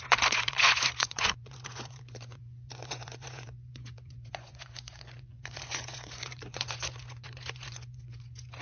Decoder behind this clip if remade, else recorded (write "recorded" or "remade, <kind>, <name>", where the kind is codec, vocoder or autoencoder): remade, vocoder, Vocos